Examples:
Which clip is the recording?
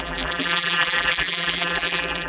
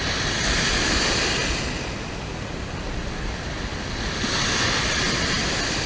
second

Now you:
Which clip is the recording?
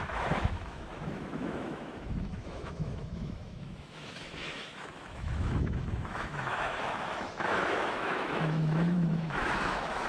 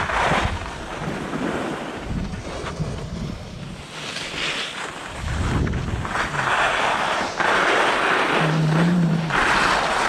second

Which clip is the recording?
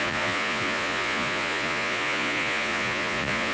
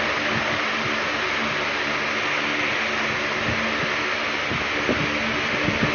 second